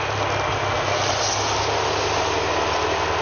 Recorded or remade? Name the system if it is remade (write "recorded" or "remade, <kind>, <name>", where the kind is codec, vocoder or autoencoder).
recorded